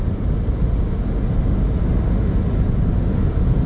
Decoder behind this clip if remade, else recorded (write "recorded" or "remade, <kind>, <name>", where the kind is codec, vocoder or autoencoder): recorded